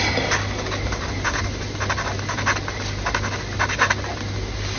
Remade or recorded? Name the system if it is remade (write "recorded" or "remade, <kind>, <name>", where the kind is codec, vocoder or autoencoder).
recorded